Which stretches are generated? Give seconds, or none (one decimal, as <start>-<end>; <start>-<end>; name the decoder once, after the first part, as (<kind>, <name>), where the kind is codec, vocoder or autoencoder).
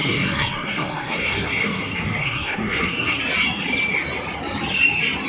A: 0.0-3.2 (codec, SNAC)